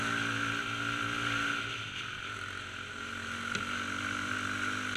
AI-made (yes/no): no